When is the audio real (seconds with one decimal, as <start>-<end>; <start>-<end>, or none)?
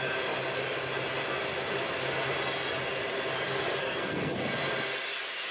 0.0-3.8; 4.5-5.5